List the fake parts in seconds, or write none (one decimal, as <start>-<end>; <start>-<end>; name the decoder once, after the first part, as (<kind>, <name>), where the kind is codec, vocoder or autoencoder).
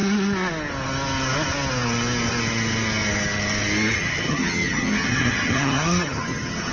4.0-6.7 (vocoder, HiFi-GAN)